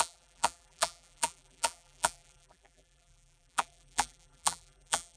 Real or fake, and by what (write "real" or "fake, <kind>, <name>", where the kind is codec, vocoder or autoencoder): fake, vocoder, BigVGAN v2